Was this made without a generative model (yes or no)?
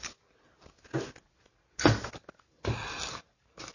yes